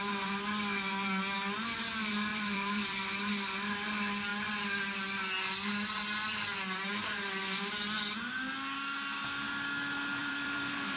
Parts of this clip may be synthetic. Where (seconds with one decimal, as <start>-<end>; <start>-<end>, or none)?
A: 2.3-3.0; 10.2-11.0